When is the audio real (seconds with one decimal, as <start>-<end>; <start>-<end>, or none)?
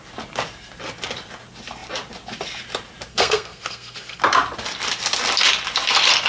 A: 0.0-3.1; 4.2-6.3